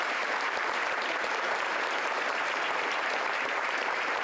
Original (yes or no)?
no